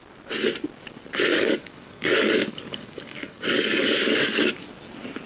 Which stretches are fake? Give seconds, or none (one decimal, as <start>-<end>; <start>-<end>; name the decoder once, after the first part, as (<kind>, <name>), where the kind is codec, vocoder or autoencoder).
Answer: 1.3-4.5 (codec, DAC)